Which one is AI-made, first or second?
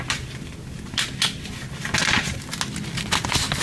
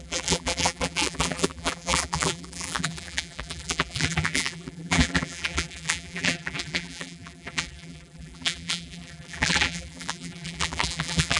second